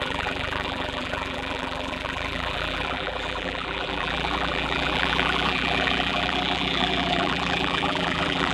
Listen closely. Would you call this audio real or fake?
fake